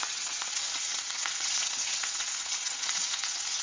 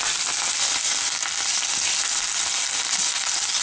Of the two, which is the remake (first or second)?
first